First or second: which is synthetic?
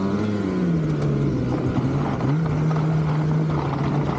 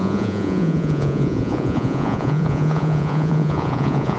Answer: second